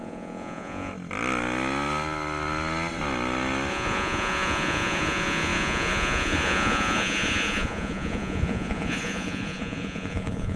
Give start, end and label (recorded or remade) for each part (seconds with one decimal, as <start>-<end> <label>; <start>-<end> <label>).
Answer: 0.0-0.9 remade; 0.9-3.7 recorded; 3.7-10.6 remade